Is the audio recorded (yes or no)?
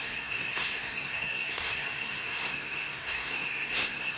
no